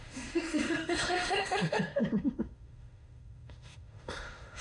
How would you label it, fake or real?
fake